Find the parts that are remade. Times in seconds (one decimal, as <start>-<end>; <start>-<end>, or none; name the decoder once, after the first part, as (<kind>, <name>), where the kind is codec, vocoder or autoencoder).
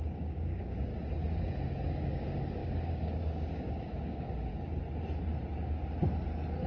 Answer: 0.0-0.9 (codec, DAC); 1.9-4.5